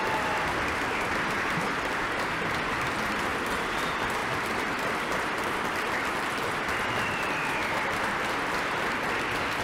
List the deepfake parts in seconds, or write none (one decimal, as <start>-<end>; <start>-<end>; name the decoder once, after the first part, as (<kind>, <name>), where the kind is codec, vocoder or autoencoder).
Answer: 3.3-3.8 (vocoder, BigVGAN v2); 4.2-6.0; 7.6-8.3